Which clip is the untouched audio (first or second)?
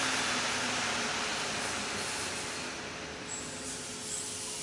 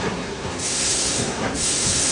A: first